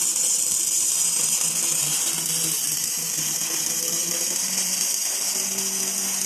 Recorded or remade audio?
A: recorded